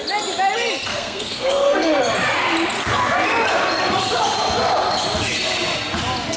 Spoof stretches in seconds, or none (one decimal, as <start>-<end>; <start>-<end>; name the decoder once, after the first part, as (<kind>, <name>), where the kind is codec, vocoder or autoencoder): 0.9-2.0 (codec, SNAC)